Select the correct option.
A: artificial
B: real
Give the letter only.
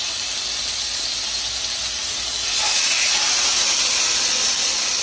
B